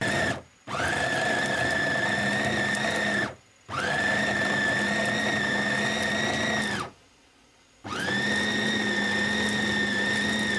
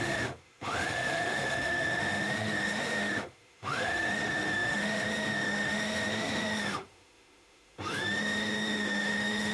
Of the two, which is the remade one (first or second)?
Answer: second